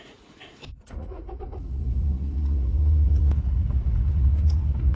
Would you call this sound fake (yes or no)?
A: yes